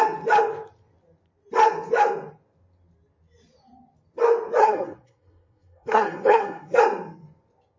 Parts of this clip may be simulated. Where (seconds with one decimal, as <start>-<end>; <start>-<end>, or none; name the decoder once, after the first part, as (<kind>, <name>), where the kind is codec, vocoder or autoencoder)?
4.6-6.8 (codec, SNAC)